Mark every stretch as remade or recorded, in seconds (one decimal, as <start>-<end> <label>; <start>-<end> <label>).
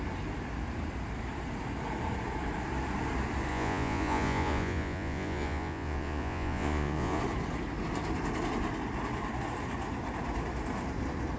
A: 0.0-3.5 recorded; 3.5-7.2 remade; 7.2-11.4 recorded